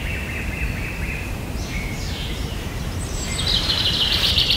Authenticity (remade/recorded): remade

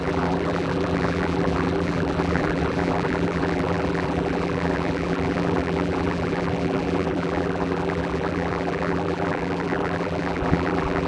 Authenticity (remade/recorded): remade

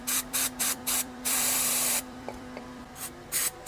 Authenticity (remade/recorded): remade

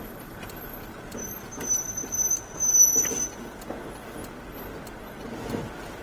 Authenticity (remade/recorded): recorded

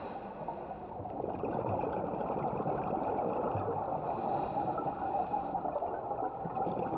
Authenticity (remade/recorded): recorded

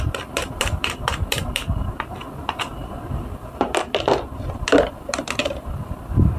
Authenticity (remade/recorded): remade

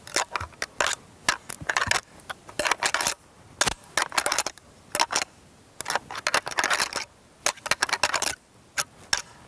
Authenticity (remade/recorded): recorded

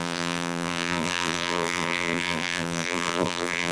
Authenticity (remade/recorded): remade